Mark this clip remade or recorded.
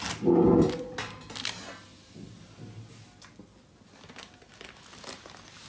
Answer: recorded